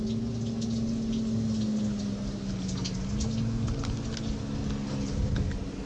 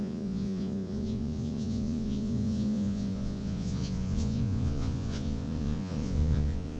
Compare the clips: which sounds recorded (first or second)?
first